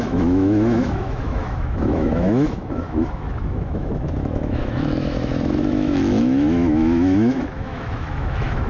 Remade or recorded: remade